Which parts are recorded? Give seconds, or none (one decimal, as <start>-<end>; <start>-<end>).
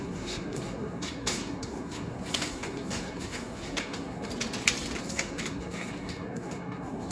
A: 4.3-5.0